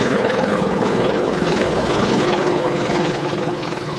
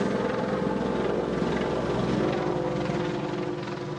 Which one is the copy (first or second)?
first